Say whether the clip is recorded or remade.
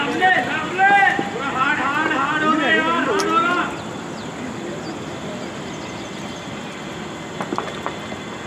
recorded